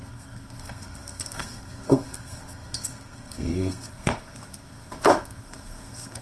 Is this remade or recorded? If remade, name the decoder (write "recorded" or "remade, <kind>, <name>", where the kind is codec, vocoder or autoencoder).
remade, codec, SNAC